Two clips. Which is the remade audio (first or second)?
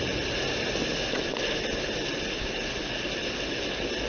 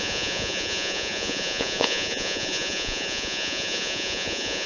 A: second